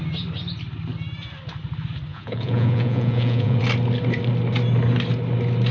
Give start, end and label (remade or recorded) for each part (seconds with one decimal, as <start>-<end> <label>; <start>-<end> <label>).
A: 0.0-2.1 recorded; 2.1-3.6 remade; 3.6-5.7 recorded